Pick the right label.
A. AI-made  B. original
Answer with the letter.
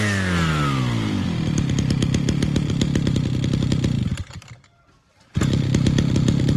B